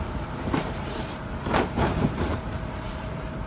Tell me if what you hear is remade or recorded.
remade